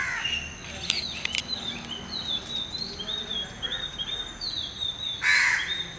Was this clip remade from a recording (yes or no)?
no